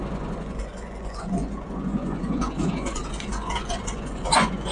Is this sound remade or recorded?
remade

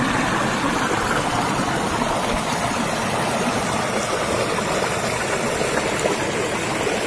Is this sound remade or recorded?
recorded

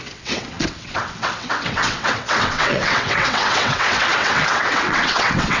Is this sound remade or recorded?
remade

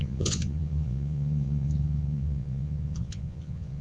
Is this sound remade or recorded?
remade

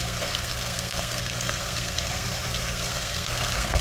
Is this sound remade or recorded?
remade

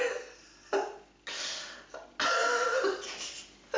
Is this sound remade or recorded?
recorded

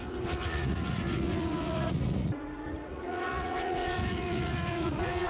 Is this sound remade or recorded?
remade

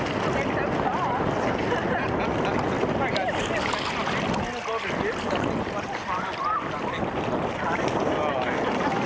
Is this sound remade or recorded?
recorded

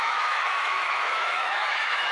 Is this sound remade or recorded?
remade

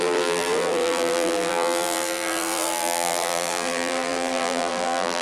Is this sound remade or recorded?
remade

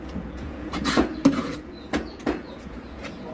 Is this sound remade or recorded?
remade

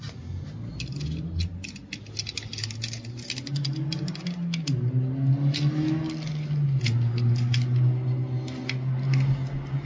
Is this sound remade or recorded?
recorded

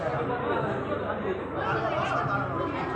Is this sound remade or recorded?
recorded